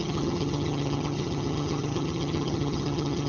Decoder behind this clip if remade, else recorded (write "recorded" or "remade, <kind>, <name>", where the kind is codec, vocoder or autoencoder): remade, vocoder, HiFi-GAN